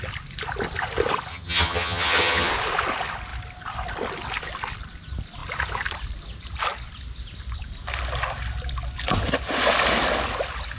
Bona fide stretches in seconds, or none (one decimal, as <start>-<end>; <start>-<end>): 0.0-1.3; 2.5-10.8